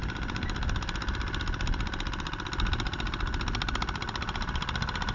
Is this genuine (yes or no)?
yes